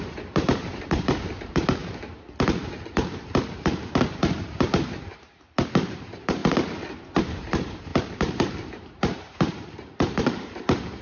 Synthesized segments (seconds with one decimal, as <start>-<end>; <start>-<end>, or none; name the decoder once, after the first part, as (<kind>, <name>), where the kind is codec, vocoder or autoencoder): 0.0-1.8 (vocoder, BigVGAN v2); 4.4-6.4; 7.2-11.0